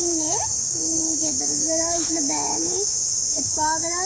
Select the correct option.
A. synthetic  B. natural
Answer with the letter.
A